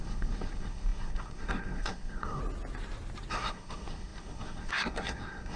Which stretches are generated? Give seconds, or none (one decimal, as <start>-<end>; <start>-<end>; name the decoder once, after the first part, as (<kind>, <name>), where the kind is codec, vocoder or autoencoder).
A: 0.0-2.4 (codec, SNAC); 3.3-5.6